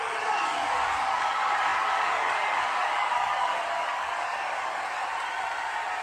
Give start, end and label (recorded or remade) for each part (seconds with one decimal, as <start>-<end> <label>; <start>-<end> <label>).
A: 0.0-5.0 remade; 5.0-6.0 recorded